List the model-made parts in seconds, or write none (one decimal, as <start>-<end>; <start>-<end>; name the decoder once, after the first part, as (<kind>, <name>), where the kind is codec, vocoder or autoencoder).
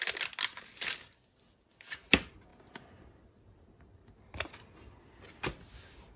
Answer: none